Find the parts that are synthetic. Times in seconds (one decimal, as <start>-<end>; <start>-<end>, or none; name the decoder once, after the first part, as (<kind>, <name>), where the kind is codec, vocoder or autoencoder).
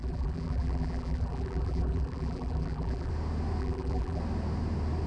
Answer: 0.0-3.1 (vocoder, BigVGAN v2); 3.6-4.2